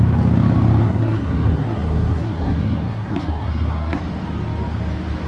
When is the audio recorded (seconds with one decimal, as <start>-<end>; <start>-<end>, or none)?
0.0-0.8; 4.0-5.3